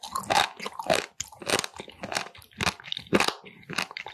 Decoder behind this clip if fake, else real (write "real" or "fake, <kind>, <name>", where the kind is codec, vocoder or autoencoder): real